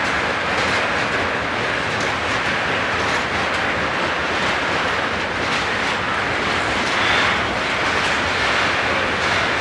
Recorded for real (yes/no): yes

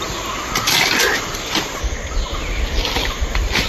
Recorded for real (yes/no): yes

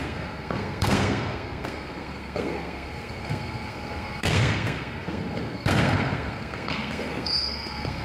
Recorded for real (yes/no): no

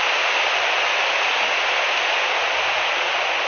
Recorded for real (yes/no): yes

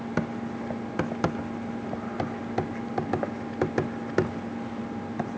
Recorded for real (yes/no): yes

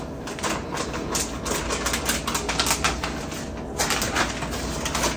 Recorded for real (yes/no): yes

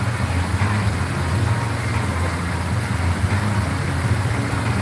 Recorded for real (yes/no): yes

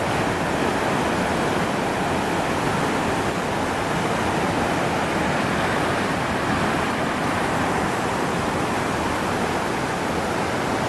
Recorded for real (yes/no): yes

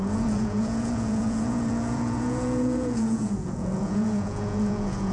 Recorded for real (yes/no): no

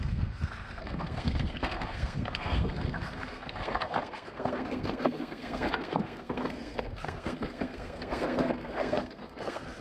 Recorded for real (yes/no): no